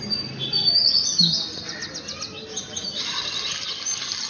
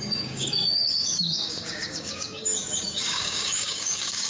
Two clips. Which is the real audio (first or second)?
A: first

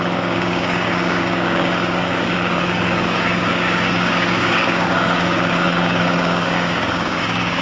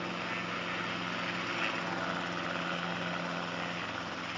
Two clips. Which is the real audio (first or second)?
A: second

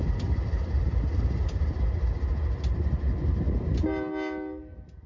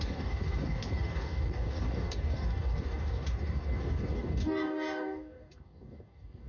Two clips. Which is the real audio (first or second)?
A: first